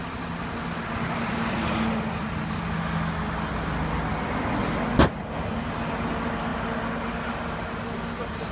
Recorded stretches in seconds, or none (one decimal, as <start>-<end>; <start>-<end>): 0.0-8.5